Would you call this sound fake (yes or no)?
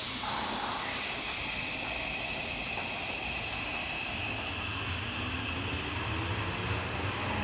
no